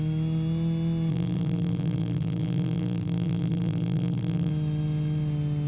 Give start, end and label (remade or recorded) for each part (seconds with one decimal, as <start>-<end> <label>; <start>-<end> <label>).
0.0-1.1 recorded; 1.1-4.5 remade; 4.5-5.7 recorded